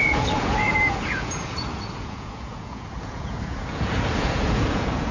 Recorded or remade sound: remade